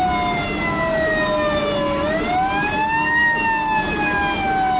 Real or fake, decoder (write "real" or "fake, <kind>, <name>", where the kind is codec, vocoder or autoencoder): real